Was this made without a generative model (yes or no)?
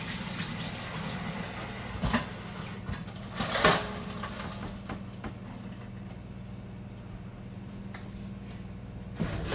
yes